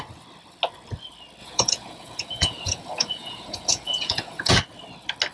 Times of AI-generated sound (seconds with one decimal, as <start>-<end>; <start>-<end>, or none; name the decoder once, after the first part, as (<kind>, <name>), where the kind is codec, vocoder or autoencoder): 1.4-4.5 (vocoder, Vocos)